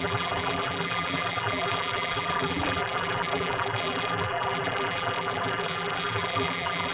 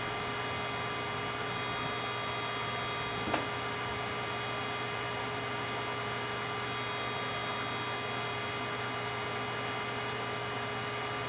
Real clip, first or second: second